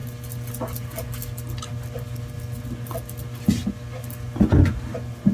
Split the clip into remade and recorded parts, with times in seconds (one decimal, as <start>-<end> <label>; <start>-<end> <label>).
0.0-5.3 recorded